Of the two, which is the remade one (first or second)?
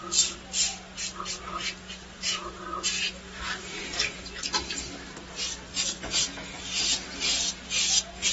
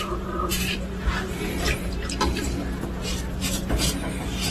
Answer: second